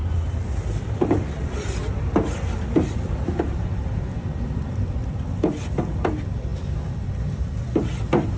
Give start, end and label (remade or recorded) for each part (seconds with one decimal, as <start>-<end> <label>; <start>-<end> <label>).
0.0-0.8 recorded; 0.8-8.4 remade